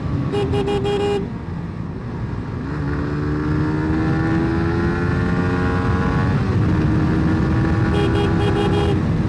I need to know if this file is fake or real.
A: real